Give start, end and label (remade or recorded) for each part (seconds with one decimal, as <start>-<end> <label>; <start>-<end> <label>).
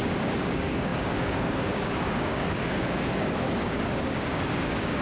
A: 0.0-5.0 remade